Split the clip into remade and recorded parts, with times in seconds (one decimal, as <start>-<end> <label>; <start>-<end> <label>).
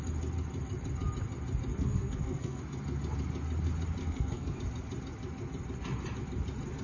0.0-1.7 recorded; 1.7-2.6 remade; 2.6-4.0 recorded; 4.0-4.6 remade; 4.6-6.8 recorded